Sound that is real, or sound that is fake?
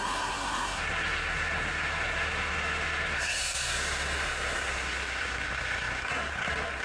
fake